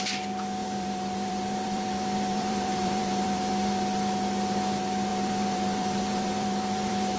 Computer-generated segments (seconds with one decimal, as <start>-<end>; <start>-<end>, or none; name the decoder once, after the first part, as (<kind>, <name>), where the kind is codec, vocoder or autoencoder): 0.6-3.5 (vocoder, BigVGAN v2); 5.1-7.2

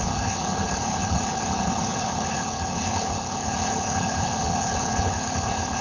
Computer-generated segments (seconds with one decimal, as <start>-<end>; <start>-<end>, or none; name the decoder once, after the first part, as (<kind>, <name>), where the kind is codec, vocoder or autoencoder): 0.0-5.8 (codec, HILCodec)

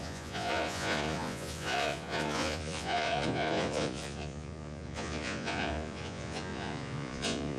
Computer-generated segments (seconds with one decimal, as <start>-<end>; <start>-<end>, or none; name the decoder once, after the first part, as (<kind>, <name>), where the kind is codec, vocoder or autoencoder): 0.0-7.6 (vocoder, Vocos)

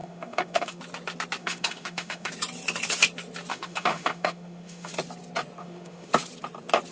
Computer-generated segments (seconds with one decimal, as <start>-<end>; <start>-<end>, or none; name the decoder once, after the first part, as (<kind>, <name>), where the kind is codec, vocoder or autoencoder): 0.0-0.8 (autoencoder, DAC-VAE); 1.4-2.3; 3.5-4.9; 5.6-6.1

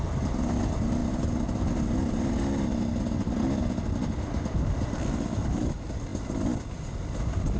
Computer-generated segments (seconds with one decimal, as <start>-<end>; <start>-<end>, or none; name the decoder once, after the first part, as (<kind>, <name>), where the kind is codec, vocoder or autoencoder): none

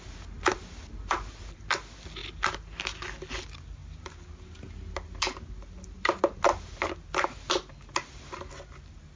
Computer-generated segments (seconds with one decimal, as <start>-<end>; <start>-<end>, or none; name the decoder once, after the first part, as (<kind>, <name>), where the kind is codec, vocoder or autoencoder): none